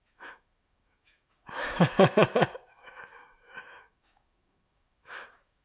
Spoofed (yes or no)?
yes